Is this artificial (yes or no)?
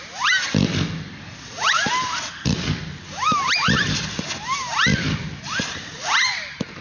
no